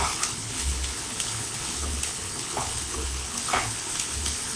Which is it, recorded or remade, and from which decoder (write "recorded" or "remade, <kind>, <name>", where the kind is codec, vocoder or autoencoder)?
remade, codec, HILCodec